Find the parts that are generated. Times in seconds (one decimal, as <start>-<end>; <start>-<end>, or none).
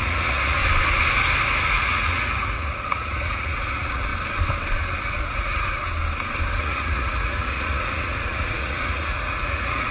0.0-0.6; 1.7-4.1; 5.0-5.8; 6.6-9.9